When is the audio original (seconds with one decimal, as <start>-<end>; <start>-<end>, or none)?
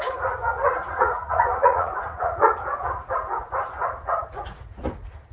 none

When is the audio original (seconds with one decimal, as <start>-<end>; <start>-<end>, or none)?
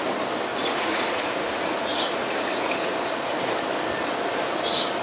0.0-0.5; 3.5-5.0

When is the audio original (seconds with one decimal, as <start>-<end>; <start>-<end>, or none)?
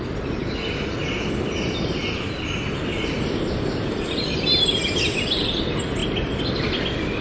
0.0-7.2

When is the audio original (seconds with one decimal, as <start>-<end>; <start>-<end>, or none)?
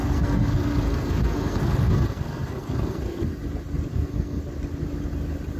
3.4-3.9; 4.4-5.6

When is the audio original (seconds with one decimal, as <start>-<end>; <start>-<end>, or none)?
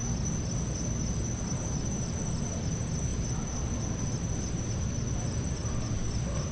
0.0-6.5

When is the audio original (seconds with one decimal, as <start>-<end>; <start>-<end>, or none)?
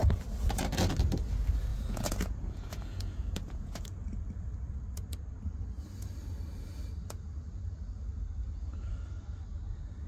0.0-1.7; 3.8-10.1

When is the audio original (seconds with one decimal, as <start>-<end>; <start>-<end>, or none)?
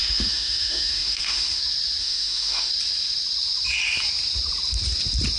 1.6-2.0; 2.7-5.4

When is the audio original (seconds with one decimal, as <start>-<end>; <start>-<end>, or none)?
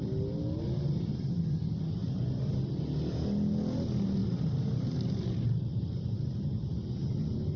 0.0-2.0; 2.6-4.2; 7.1-7.6